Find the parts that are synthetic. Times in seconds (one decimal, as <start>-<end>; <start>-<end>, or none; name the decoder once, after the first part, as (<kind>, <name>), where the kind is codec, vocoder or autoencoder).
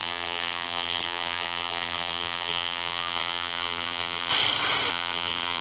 0.0-4.3 (vocoder, BigVGAN v2); 4.9-5.6